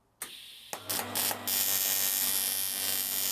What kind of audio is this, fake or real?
real